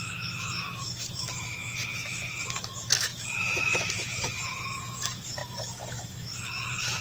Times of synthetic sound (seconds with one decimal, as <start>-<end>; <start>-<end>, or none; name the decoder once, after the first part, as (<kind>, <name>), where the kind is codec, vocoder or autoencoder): 0.0-7.0 (autoencoder, DAC-VAE)